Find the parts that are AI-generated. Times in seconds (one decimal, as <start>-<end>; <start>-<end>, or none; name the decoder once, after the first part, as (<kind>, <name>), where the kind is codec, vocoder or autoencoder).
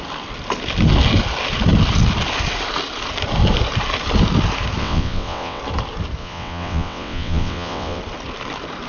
4.8-5.6 (vocoder, WaveNeXt); 6.2-8.0